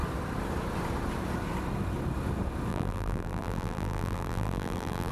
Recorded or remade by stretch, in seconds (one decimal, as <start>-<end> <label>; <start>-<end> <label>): 0.0-2.7 recorded; 2.7-5.1 remade